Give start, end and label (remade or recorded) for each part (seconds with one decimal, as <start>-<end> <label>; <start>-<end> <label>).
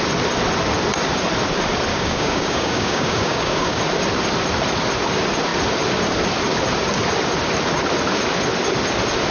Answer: 0.0-1.9 recorded; 1.9-3.8 remade; 3.8-9.3 recorded